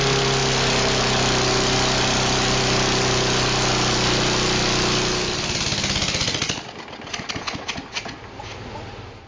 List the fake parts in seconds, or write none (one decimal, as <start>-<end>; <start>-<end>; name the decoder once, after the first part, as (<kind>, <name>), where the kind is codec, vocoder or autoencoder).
none

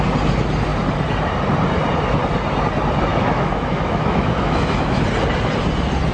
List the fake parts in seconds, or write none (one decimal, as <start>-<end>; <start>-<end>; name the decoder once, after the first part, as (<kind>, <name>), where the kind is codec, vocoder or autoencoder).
3.1-5.0 (autoencoder, DAC-VAE)

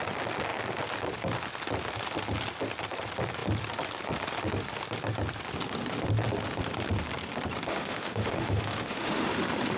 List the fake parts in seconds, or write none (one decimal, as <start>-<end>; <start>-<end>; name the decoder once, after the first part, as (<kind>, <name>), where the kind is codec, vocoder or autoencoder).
7.7-9.3 (autoencoder, DAC-VAE)